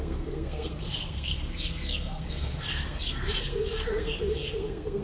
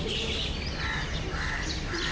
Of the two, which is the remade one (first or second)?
first